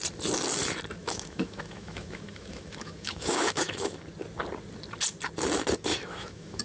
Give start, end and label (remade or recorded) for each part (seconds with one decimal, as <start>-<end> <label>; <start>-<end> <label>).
0.0-1.0 recorded; 1.0-4.0 remade; 4.0-5.9 recorded; 5.9-6.6 remade